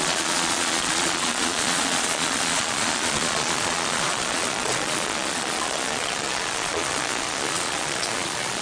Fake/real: fake